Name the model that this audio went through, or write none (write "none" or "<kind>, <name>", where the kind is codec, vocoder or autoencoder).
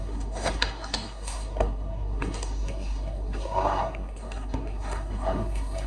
codec, SNAC